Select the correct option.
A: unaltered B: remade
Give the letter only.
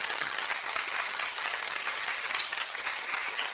B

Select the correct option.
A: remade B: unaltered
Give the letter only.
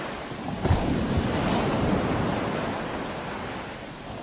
B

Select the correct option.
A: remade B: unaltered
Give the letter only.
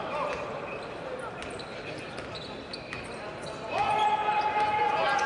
B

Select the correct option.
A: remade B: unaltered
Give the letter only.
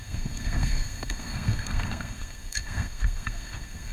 A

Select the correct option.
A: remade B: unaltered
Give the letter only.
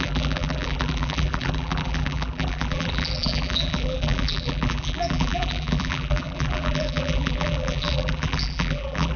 A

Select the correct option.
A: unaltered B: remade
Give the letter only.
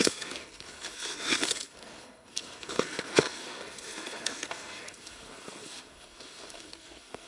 B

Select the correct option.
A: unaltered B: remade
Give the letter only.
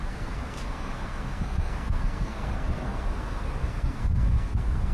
B